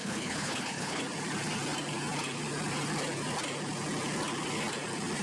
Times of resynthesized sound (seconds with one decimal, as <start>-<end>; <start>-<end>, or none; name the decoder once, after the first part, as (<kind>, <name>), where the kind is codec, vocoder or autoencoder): 0.0-1.0 (codec, HILCodec)